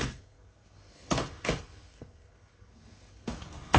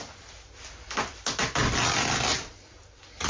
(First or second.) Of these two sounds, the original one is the second